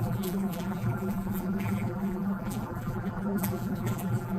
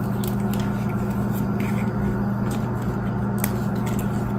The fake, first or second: first